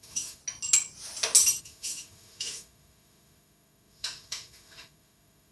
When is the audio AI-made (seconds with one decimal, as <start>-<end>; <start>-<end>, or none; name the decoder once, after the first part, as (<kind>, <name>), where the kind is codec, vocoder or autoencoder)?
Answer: 0.0-0.4 (autoencoder, DAC-VAE); 1.6-5.5